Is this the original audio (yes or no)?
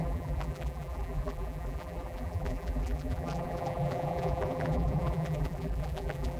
no